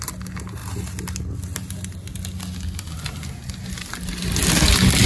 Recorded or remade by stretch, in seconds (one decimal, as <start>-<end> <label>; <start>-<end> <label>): 0.0-5.1 recorded